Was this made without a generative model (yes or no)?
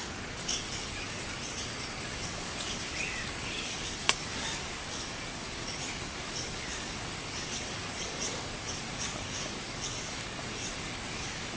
no